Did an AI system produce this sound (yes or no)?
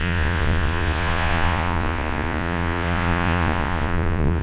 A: yes